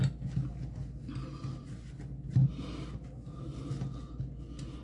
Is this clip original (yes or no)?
yes